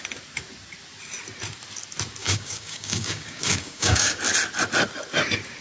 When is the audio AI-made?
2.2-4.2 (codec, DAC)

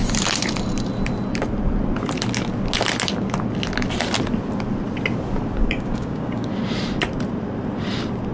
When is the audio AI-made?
5.6-6.5 (codec, DAC)

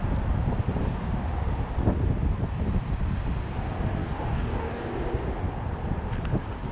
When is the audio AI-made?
4.0-4.8 (codec, DAC)

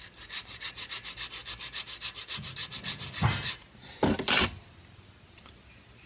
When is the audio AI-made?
none

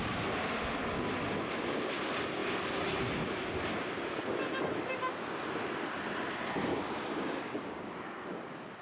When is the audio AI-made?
6.7-7.9 (codec, DAC)